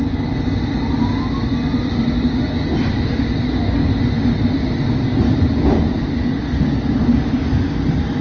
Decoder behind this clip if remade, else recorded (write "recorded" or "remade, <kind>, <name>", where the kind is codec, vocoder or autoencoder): recorded